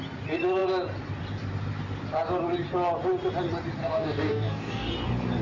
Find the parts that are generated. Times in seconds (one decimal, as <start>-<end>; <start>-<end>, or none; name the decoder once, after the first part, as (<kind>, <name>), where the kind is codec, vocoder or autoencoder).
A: 3.8-4.9 (codec, DAC)